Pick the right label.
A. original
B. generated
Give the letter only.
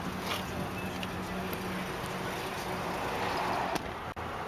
A